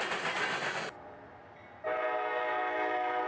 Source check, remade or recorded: recorded